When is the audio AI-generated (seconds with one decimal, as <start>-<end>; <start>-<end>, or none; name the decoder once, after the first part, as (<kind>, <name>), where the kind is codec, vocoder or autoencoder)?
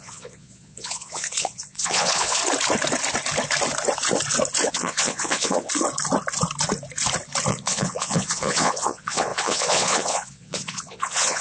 0.0-2.4 (vocoder, Vocos); 4.7-5.7; 7.5-11.4